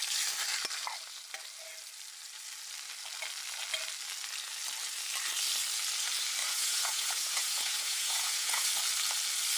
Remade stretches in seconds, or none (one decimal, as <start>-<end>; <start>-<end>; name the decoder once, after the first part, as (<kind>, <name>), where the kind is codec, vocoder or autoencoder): 6.4-8.7 (vocoder, Vocos)